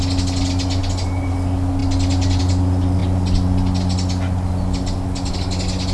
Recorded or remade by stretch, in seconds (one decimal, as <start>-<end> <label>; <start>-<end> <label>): 0.0-5.9 recorded

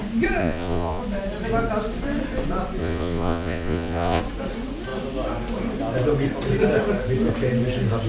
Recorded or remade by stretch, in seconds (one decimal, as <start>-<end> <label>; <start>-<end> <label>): 0.0-0.4 recorded; 0.4-1.0 remade; 1.0-2.8 recorded; 2.8-4.2 remade; 4.2-8.1 recorded

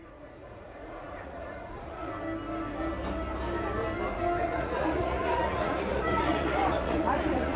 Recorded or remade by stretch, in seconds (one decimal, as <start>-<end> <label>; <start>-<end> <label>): 0.0-2.1 remade; 2.1-4.4 recorded; 4.4-7.6 remade

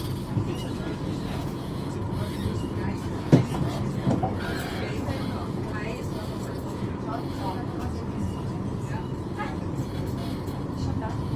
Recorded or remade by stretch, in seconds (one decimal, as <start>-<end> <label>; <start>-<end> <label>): 0.0-1.4 recorded; 1.4-2.0 remade; 2.0-11.4 recorded

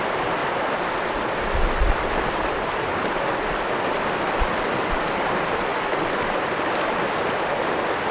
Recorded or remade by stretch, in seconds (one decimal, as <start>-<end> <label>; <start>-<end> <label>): 0.0-8.1 recorded

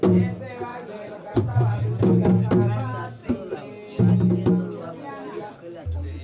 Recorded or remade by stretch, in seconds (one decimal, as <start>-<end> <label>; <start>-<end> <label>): 0.0-0.7 recorded; 0.7-1.8 remade; 1.8-6.2 recorded

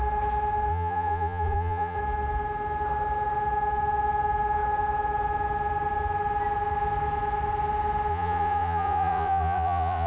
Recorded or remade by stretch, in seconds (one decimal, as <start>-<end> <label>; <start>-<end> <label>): 0.0-0.7 recorded; 0.7-2.0 remade; 2.0-8.1 recorded; 8.1-10.1 remade

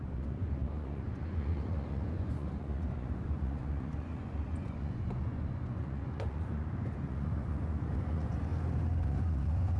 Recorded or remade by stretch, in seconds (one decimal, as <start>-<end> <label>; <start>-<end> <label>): 0.0-8.5 remade; 8.5-9.0 recorded; 9.0-9.8 remade